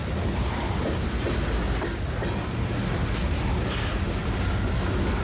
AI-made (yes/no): no